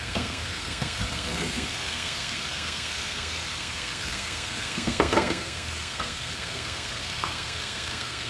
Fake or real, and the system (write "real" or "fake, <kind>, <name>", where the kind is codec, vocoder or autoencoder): fake, codec, SNAC